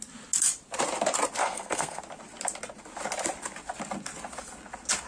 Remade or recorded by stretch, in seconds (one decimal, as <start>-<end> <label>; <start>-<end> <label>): 0.0-1.4 recorded; 1.4-2.0 remade; 2.0-5.1 recorded